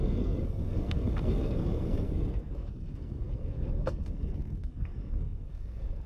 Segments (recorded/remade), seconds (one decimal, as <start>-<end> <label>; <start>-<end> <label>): 0.0-6.1 remade